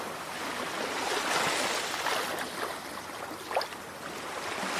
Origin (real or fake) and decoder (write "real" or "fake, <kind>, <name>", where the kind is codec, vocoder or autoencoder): real